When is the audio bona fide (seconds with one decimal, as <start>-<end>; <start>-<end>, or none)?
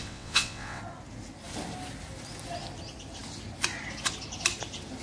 0.8-5.0